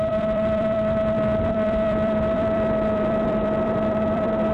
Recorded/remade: remade